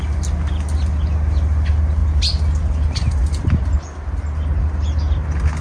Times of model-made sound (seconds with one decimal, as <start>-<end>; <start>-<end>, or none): none

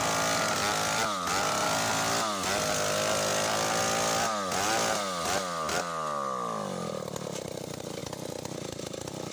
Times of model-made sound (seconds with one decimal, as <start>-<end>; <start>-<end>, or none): 3.3-3.8